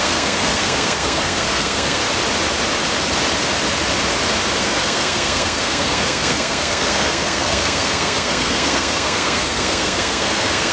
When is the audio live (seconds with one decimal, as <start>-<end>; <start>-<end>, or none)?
2.0-4.6